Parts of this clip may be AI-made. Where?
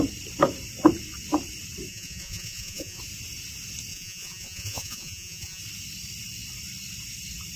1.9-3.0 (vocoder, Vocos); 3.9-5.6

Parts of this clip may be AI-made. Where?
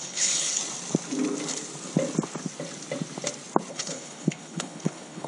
0.0-0.6 (codec, HILCodec); 3.7-5.3